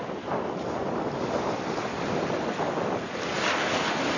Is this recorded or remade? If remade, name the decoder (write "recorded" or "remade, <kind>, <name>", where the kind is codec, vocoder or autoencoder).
recorded